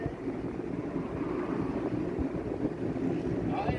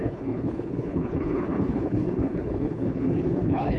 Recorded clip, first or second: first